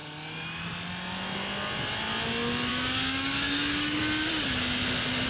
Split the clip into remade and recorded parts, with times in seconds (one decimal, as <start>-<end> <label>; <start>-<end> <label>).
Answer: 0.0-2.7 recorded; 2.7-4.0 remade; 4.0-5.3 recorded